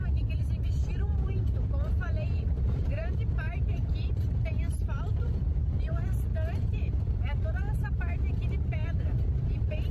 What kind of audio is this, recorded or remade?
remade